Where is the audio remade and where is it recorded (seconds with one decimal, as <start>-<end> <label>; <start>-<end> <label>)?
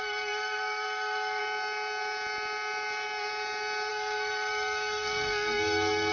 0.0-1.4 remade; 1.4-3.9 recorded; 3.9-6.1 remade